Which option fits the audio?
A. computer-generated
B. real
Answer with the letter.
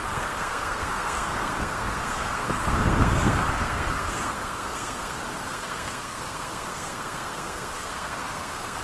A